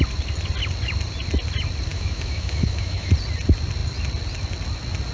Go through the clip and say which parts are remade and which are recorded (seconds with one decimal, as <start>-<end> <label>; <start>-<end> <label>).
0.0-1.9 recorded; 1.9-3.1 remade; 3.1-5.1 recorded